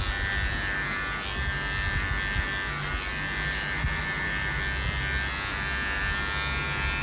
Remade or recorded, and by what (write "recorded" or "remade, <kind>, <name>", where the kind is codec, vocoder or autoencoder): recorded